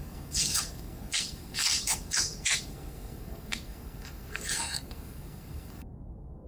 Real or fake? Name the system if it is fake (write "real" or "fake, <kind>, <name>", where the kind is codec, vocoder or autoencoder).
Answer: fake, codec, SNAC